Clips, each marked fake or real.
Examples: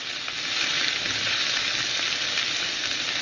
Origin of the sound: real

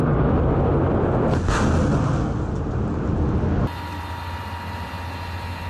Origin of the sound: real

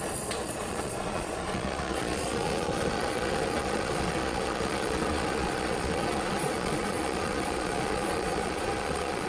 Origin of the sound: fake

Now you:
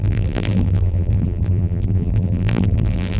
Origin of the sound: fake